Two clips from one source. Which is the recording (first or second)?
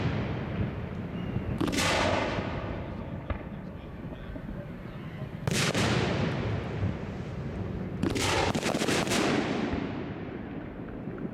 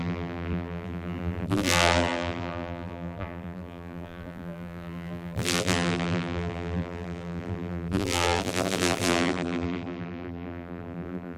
first